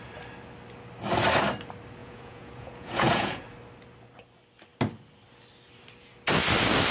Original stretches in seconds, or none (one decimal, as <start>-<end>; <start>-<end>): 0.0-2.0; 3.4-6.9